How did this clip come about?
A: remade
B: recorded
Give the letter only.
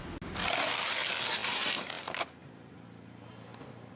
B